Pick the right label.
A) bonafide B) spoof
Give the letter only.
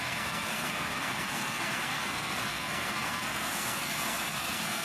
B